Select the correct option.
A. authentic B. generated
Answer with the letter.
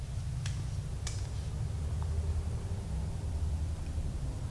A